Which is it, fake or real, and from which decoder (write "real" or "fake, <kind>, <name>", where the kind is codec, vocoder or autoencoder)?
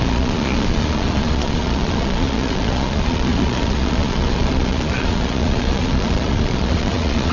fake, vocoder, Vocos